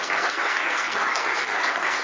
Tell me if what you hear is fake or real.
fake